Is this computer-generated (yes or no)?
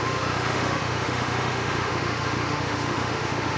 yes